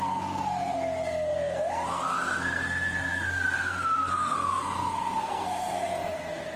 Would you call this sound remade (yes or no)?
yes